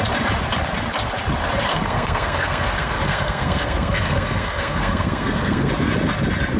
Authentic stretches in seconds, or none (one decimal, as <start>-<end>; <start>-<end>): 0.0-1.7; 5.7-6.6

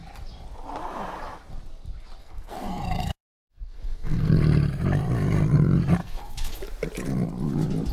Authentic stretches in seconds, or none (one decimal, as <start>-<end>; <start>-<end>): 0.0-2.2; 4.3-6.0; 6.6-7.9

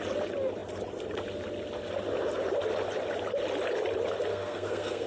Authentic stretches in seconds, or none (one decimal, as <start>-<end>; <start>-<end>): 0.0-4.3